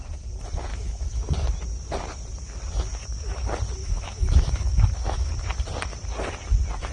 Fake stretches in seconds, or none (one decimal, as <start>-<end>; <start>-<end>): 0.7-1.3; 3.8-5.3